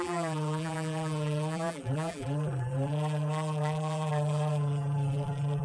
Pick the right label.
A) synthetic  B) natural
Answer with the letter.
A